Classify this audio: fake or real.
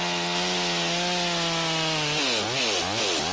real